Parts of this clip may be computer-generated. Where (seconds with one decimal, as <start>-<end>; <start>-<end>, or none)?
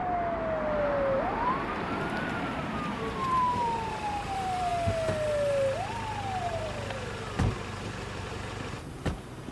1.2-4.7; 6.4-9.5